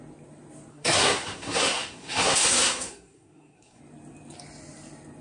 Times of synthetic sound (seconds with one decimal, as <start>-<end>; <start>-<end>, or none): 0.7-3.8